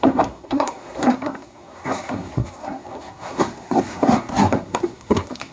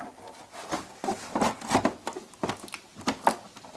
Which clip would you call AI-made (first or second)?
first